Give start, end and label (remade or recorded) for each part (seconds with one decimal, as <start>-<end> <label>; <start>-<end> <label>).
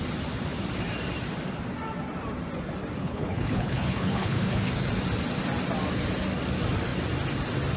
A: 0.0-3.0 recorded; 3.0-4.6 remade; 4.6-7.8 recorded